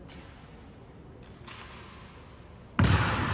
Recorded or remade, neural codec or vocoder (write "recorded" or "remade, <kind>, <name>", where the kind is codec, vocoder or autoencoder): recorded